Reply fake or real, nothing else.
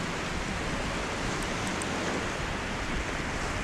real